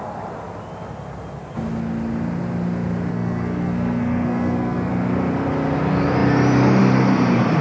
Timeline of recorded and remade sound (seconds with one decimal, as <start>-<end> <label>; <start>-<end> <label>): 0.0-3.1 recorded; 3.1-4.9 remade; 4.9-7.6 recorded